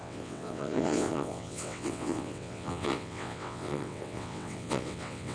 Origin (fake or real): fake